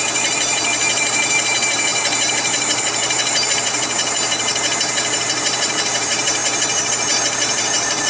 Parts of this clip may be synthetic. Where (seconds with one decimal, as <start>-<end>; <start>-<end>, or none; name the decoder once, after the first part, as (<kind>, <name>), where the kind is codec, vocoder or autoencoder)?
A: 0.0-6.4 (vocoder, BigVGAN v2); 6.9-8.1